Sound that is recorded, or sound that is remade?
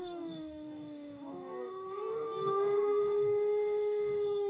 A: remade